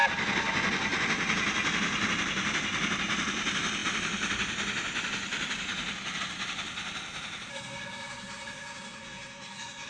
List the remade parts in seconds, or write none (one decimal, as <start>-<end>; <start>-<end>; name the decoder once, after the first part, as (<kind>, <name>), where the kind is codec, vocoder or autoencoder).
7.5-9.9 (codec, SNAC)